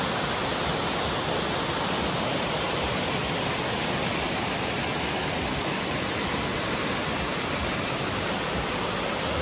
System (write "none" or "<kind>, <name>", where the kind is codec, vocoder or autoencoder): none